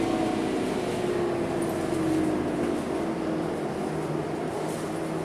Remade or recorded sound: recorded